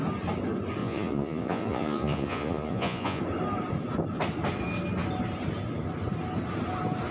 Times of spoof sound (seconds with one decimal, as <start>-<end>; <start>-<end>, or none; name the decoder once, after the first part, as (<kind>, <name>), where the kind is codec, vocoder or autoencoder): 0.8-3.2 (vocoder, Vocos)